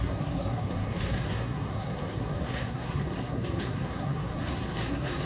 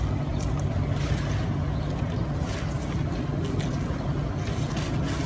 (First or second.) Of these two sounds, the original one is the second